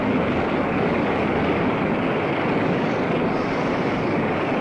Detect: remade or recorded remade